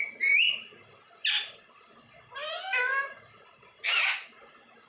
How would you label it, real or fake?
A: real